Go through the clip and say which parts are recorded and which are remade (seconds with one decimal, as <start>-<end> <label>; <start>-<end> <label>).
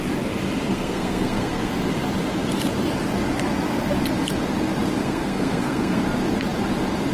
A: 0.0-0.7 recorded; 0.7-1.7 remade; 1.7-5.0 recorded; 5.0-6.0 remade; 6.0-7.1 recorded